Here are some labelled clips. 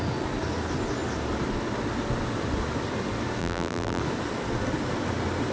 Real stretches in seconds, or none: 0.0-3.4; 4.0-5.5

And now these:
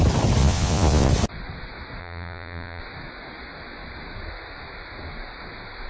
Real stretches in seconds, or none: 0.0-0.4; 1.1-2.0; 2.8-5.9

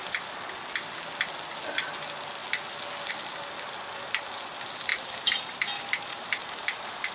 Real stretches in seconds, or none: 0.0-4.9

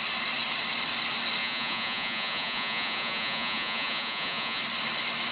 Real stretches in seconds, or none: 0.0-1.4; 4.6-5.3

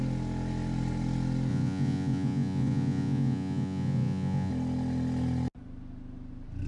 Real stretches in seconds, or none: 0.0-1.5; 4.5-6.7

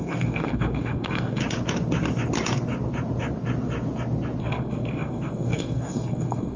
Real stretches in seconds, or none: 1.4-4.4

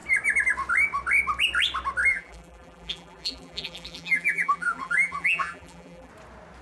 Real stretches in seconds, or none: 0.0-2.1; 6.1-6.6